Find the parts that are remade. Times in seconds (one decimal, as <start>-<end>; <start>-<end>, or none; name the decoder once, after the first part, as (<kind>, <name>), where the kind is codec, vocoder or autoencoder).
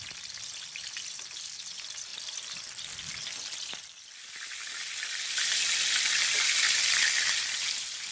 none